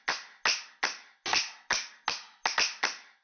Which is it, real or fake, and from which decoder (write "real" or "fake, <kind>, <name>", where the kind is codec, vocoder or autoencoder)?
real